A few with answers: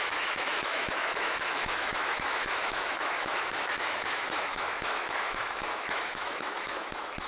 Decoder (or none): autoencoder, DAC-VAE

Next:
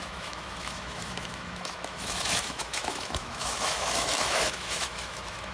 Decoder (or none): autoencoder, DAC-VAE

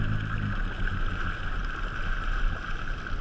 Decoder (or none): none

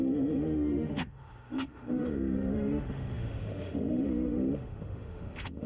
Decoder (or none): autoencoder, DAC-VAE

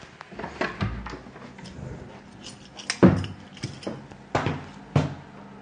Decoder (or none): none